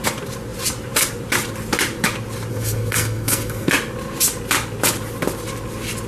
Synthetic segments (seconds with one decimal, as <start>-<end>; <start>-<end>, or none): 2.5-3.7